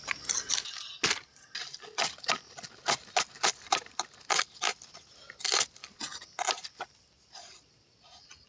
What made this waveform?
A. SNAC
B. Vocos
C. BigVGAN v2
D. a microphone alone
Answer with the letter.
D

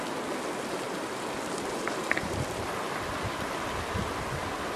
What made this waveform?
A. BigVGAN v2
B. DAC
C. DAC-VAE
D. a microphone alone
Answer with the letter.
D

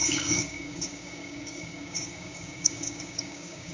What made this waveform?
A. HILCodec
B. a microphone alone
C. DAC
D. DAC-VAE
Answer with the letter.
C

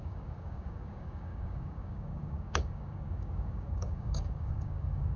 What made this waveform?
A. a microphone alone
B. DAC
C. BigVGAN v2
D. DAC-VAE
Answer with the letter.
B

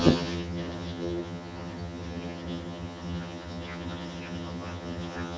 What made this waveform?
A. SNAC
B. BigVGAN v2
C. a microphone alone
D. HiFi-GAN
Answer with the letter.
D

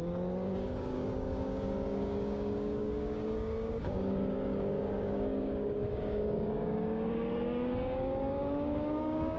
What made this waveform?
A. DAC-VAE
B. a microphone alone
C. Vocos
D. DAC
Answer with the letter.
D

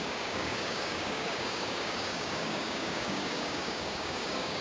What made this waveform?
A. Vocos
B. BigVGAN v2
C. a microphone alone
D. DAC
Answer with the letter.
D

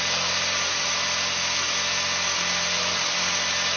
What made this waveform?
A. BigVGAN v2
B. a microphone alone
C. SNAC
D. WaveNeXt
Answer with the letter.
B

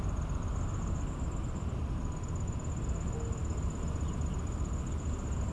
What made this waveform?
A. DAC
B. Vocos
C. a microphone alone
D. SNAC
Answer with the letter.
C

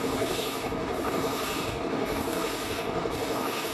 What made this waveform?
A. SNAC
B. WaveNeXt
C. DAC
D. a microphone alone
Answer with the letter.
C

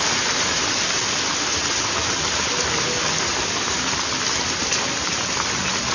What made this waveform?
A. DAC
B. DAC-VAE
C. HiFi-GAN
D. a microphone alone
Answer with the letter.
D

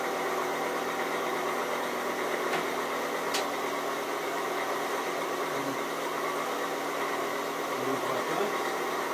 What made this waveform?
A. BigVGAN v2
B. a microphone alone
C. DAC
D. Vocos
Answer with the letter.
B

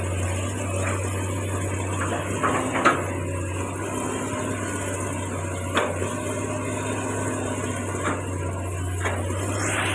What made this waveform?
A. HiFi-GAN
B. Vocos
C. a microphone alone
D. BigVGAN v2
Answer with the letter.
C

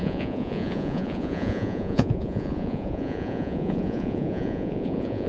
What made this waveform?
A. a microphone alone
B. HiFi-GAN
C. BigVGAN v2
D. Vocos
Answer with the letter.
D